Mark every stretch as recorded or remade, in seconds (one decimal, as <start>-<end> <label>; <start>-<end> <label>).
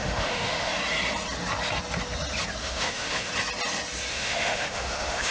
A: 0.0-0.7 remade; 0.7-2.6 recorded; 2.6-3.3 remade; 3.3-4.1 recorded; 4.1-5.3 remade